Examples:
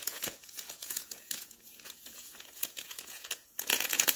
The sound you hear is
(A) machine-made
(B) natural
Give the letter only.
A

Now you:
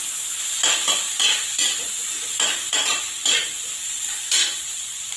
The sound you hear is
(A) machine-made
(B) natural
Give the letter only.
B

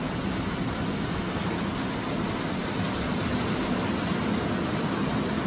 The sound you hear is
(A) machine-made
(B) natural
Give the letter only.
B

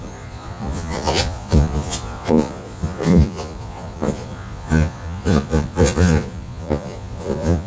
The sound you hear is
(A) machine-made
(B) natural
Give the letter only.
A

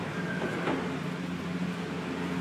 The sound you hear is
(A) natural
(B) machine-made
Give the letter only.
A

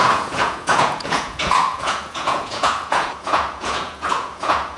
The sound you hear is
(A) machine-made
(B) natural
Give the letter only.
A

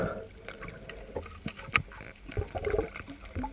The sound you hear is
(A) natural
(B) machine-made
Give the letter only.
A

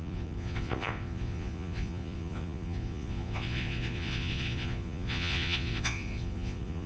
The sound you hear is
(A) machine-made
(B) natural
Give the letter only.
A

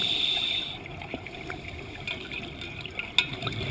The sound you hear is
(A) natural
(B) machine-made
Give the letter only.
A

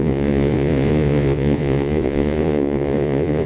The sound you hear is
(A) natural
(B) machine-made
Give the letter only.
B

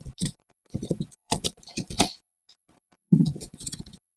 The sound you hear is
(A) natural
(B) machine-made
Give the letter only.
B